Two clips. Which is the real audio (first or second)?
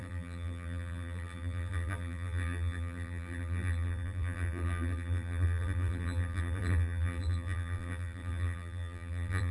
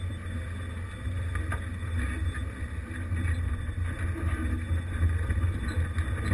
second